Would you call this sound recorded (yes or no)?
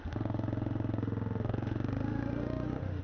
no